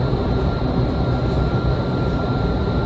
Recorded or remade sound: recorded